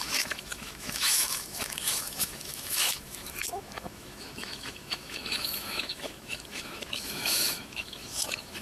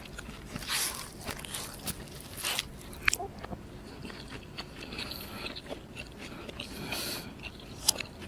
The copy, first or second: first